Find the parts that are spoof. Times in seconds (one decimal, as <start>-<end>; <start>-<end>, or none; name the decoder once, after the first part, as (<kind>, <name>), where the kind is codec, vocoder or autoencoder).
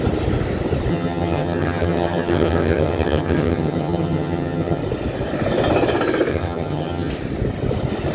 0.9-4.8 (vocoder, HiFi-GAN); 6.3-7.1